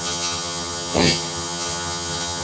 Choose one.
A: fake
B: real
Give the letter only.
A